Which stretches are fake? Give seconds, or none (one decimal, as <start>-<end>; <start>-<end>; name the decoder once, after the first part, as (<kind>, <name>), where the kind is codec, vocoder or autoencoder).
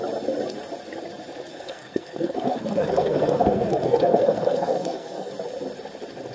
1.5-5.3 (codec, SNAC)